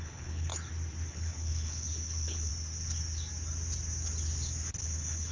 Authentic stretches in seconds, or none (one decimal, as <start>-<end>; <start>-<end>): 0.5-1.1; 2.5-4.8